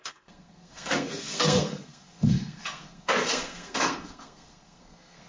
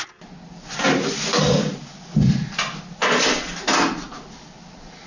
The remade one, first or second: first